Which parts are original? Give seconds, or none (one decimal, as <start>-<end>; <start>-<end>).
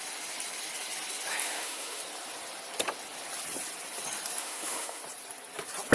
0.0-1.4; 2.0-4.4; 5.0-5.9